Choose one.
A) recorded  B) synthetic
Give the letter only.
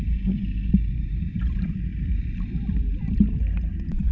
B